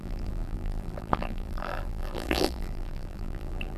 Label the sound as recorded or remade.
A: remade